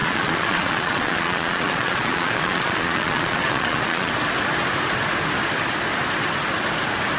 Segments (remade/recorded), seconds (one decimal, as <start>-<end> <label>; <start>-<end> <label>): 0.0-4.1 remade; 4.1-7.2 recorded

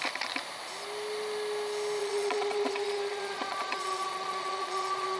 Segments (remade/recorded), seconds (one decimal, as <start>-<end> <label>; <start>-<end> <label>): 0.0-2.0 recorded; 2.0-5.2 remade

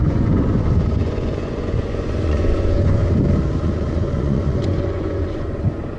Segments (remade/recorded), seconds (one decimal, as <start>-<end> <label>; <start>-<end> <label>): 0.0-3.0 remade; 3.0-3.6 recorded; 3.6-6.0 remade

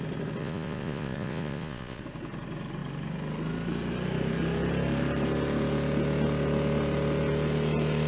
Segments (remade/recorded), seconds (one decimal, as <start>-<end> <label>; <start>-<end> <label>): 0.0-0.4 recorded; 0.4-2.0 remade; 2.0-8.1 recorded

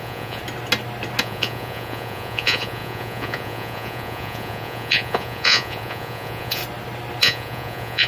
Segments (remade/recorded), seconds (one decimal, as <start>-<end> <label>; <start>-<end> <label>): 0.0-0.4 remade; 0.4-1.2 recorded; 1.2-6.6 remade; 6.6-7.2 recorded; 7.2-8.1 remade

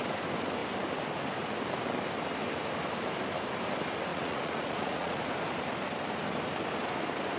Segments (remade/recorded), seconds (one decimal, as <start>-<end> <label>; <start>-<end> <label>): 0.0-4.1 recorded; 4.1-5.2 remade; 5.2-7.4 recorded

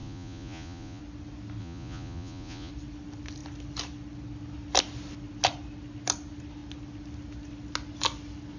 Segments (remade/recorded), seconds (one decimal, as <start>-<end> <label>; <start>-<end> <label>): 0.0-1.0 remade; 1.0-1.6 recorded; 1.6-2.7 remade; 2.7-8.6 recorded

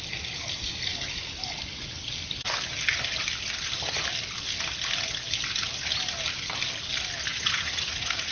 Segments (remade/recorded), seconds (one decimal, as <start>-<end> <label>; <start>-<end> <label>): 0.0-7.3 recorded; 7.3-8.3 remade